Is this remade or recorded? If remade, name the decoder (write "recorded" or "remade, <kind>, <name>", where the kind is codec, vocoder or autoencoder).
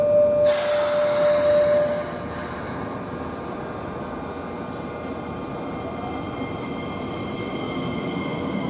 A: recorded